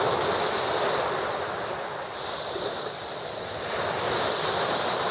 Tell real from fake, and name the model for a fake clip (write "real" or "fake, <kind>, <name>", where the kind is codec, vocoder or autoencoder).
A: real